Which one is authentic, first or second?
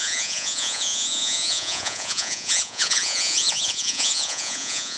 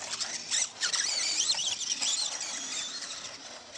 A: second